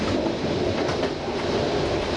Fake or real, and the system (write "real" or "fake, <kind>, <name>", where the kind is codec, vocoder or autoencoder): real